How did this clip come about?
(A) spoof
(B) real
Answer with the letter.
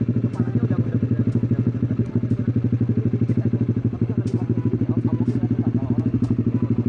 B